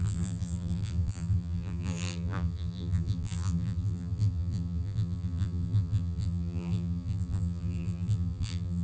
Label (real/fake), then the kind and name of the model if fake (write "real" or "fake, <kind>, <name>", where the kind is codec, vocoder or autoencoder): fake, vocoder, BigVGAN v2